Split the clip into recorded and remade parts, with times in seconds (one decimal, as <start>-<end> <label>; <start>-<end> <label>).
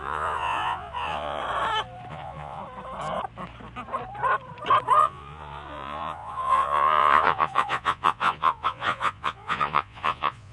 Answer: 0.0-1.4 remade; 1.4-2.1 recorded; 2.1-2.6 remade; 2.6-5.0 recorded; 5.0-10.5 remade